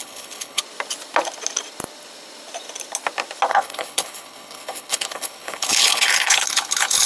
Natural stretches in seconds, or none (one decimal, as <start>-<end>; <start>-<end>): 0.6-3.5